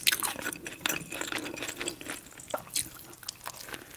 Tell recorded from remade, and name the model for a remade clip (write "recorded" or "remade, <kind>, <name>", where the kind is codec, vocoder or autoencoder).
recorded